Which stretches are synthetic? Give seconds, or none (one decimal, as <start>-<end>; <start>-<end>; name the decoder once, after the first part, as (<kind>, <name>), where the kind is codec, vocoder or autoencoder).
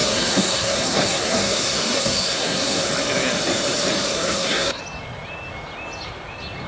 0.0-2.9 (codec, SNAC); 4.1-4.8